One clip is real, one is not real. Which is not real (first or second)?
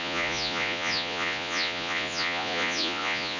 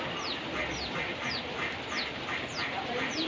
first